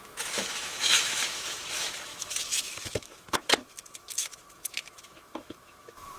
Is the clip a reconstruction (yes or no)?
yes